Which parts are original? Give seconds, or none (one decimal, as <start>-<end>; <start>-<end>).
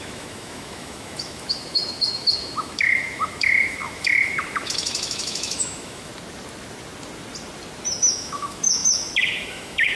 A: 6.1-8.0